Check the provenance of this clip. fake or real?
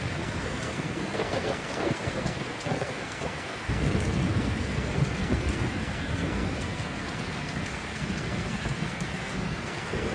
fake